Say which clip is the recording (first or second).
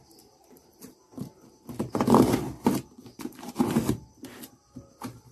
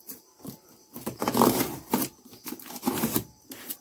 first